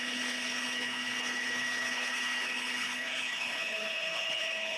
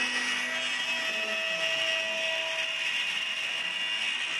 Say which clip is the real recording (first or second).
second